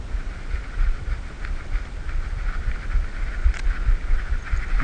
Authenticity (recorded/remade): recorded